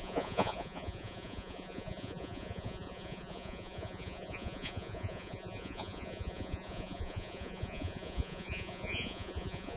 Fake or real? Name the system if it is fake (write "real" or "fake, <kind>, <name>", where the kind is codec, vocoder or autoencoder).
fake, vocoder, Vocos